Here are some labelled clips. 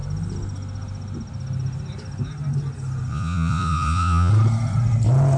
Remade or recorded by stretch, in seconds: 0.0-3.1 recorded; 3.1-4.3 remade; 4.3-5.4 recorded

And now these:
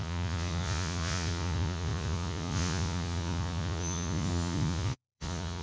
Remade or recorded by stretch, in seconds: 0.0-5.6 remade

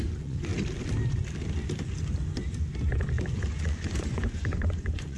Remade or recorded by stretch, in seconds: 0.0-0.5 remade; 0.5-3.6 recorded; 3.6-5.2 remade

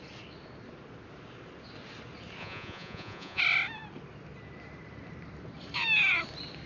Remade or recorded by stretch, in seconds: 0.0-2.4 recorded; 2.4-3.4 remade; 3.4-6.7 recorded

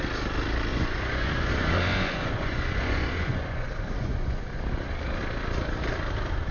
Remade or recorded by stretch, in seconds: 0.0-0.7 recorded; 0.7-4.6 remade; 4.6-6.5 recorded